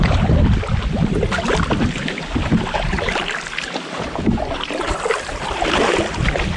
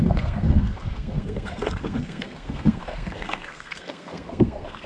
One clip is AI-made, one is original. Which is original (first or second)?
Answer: first